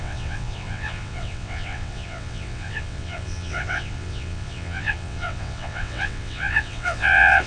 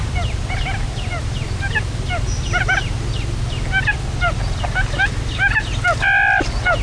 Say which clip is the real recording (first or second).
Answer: second